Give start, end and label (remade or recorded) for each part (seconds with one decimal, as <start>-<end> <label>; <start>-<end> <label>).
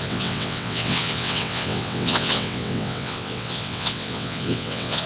0.0-5.1 remade